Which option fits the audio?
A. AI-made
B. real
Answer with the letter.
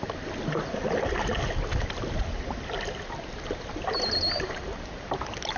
B